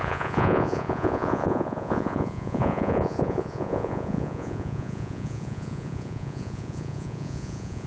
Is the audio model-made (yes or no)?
yes